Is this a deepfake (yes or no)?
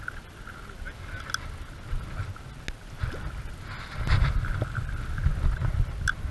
no